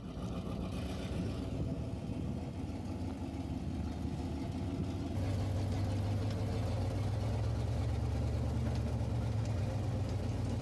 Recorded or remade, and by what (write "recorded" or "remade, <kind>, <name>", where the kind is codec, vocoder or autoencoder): recorded